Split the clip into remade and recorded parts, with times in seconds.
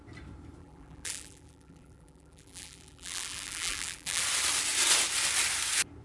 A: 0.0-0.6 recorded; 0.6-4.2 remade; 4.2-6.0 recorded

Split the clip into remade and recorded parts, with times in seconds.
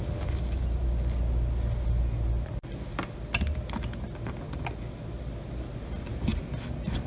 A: 0.0-7.1 recorded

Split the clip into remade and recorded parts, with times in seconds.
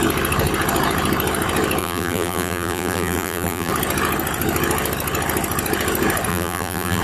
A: 0.0-1.8 recorded; 1.8-3.7 remade; 3.7-6.3 recorded; 6.3-7.0 remade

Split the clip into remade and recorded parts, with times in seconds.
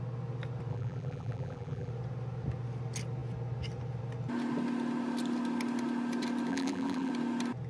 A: 0.0-0.7 recorded; 0.7-1.9 remade; 1.9-6.5 recorded; 6.5-7.1 remade; 7.1-7.7 recorded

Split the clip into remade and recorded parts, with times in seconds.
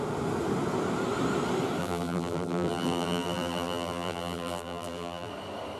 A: 0.0-1.8 recorded; 1.8-5.3 remade; 5.3-5.8 recorded